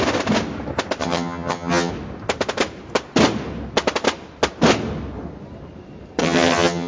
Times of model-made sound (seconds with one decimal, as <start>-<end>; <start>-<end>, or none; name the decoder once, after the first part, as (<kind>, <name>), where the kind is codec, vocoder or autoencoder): 1.0-1.9 (vocoder, HiFi-GAN); 6.2-6.9